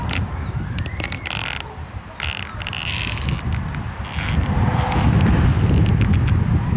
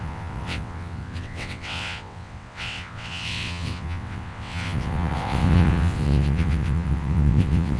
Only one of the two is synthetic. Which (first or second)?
second